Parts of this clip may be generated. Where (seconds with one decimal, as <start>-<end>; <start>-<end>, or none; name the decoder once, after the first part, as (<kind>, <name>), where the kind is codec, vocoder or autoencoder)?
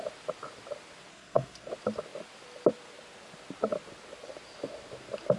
1.1-1.7 (codec, SNAC)